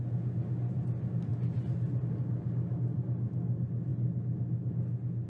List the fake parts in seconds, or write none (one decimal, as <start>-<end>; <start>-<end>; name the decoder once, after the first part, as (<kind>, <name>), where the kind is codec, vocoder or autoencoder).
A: 1.3-2.1 (vocoder, BigVGAN v2)